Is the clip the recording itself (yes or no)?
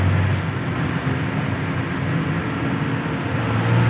yes